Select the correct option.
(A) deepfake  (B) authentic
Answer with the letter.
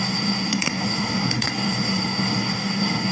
A